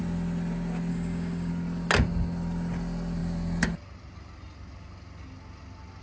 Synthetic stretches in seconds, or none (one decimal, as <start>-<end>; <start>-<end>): 0.9-1.5